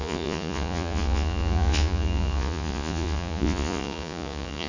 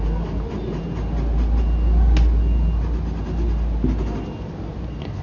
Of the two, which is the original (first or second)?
second